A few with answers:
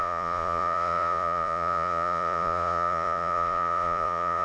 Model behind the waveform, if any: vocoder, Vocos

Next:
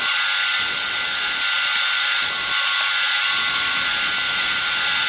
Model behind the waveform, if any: none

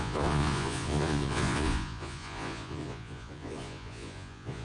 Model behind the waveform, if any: vocoder, Vocos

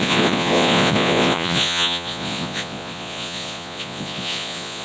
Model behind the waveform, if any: vocoder, Vocos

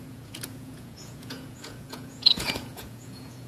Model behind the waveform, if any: vocoder, Vocos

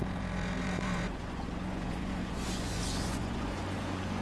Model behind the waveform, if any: vocoder, Vocos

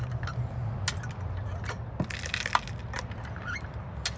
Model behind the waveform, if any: none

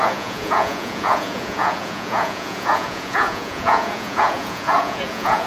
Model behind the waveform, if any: vocoder, Vocos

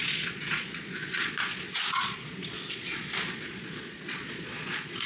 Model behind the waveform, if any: vocoder, Vocos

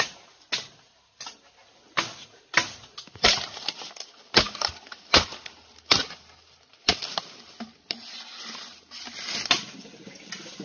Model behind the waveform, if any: none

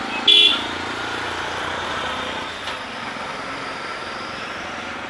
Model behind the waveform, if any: none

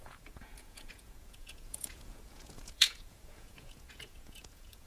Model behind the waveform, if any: vocoder, Vocos